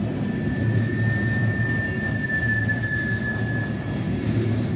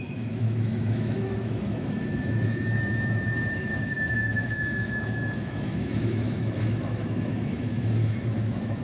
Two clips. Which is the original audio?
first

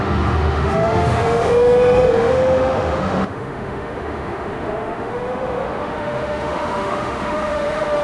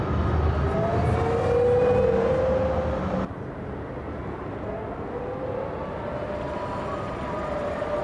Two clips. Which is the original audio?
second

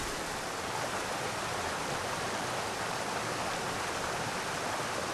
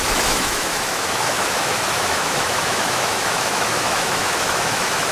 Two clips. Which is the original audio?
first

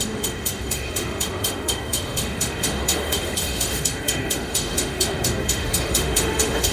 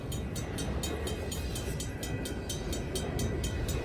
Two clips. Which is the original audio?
second